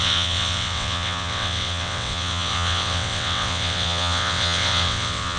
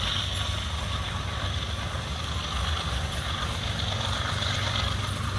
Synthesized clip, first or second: first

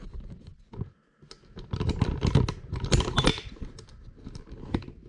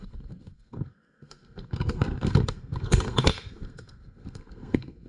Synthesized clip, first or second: second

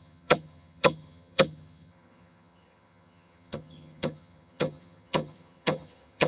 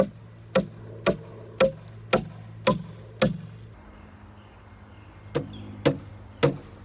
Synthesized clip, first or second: first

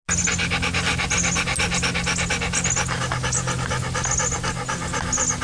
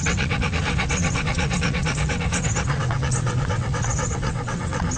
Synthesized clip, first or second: second